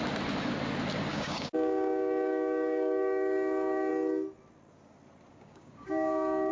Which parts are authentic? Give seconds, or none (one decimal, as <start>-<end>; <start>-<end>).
0.0-1.1; 3.9-5.3